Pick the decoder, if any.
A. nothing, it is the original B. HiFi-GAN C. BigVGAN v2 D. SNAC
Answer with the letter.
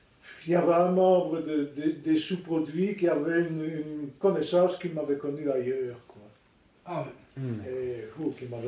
A